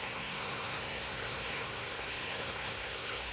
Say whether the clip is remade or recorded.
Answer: remade